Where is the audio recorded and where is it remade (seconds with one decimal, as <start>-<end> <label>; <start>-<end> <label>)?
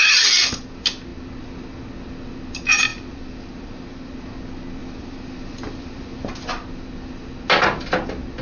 0.0-2.9 recorded; 2.9-4.1 remade; 4.1-4.8 recorded; 4.8-6.3 remade; 6.3-8.4 recorded